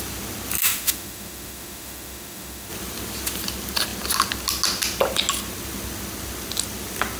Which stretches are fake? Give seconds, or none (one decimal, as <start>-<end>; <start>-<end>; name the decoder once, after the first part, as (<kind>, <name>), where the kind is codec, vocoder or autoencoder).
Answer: 0.6-2.7 (autoencoder, DAC-VAE)